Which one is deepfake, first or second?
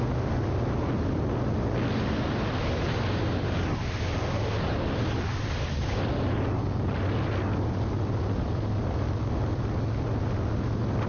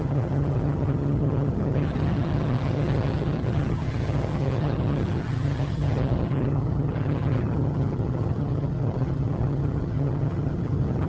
second